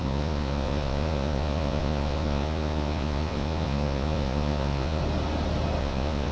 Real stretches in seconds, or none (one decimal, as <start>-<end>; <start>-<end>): 5.0-5.8